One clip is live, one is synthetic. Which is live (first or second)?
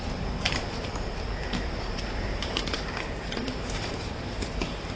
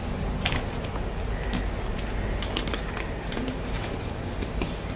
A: second